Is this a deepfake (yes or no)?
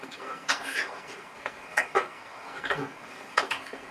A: yes